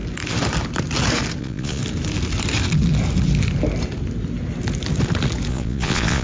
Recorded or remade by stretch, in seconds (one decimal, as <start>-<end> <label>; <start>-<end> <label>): 0.0-1.4 recorded; 1.4-1.8 remade; 1.8-5.5 recorded; 5.5-6.2 remade